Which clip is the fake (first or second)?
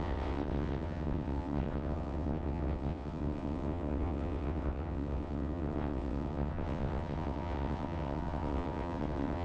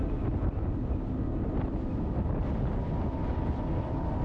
first